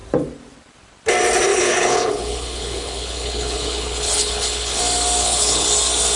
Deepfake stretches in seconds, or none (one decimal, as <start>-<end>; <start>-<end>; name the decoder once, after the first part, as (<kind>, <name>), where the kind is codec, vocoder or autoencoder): 1.5-4.8 (codec, HILCodec); 5.2-5.7